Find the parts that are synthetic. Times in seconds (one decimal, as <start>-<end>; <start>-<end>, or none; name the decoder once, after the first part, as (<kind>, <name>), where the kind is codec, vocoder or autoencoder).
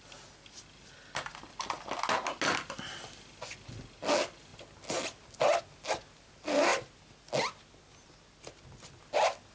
none